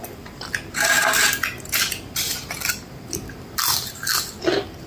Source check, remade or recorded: recorded